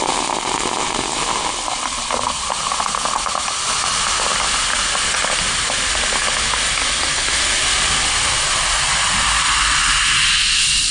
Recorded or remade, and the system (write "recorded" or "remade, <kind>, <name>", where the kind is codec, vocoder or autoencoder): recorded